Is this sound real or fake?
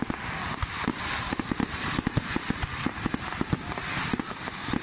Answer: fake